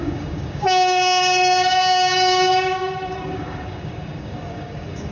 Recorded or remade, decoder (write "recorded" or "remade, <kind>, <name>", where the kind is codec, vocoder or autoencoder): remade, codec, DAC